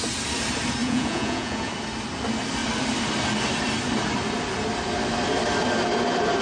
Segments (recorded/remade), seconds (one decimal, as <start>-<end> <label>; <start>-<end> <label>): 0.0-0.8 recorded; 0.8-1.7 remade; 1.7-6.4 recorded